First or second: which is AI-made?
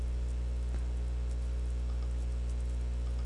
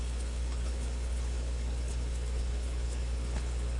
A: second